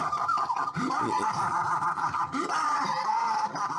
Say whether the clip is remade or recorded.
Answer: recorded